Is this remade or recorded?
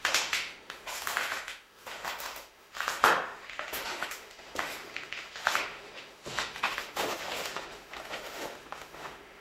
remade